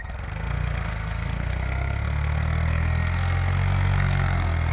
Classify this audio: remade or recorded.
remade